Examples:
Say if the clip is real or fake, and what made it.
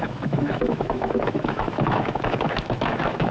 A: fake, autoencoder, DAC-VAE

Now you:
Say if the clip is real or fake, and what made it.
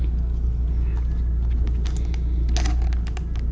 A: real